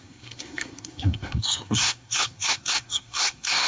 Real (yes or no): no